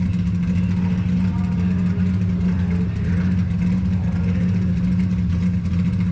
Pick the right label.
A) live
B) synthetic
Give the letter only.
A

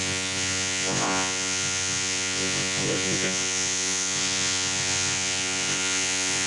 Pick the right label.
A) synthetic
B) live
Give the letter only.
A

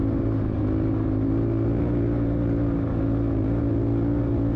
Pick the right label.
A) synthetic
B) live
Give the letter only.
B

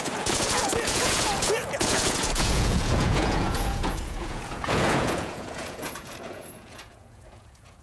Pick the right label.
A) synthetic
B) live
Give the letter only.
A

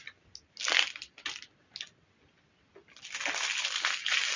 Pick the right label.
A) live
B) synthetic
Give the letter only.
A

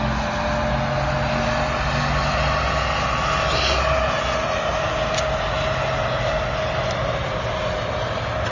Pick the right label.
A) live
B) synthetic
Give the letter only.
A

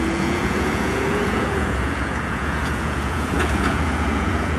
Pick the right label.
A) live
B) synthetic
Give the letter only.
B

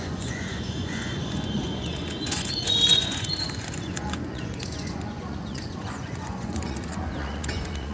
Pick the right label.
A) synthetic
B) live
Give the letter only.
A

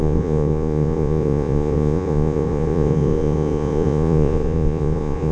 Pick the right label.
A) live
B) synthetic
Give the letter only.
B